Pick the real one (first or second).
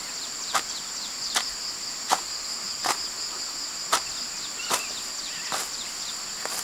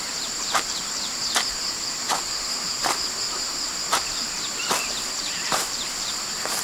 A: first